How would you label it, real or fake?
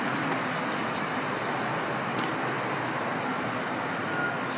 real